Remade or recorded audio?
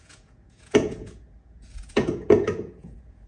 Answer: remade